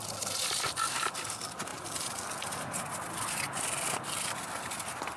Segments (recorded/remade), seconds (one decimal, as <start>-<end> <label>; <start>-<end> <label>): 0.0-5.2 recorded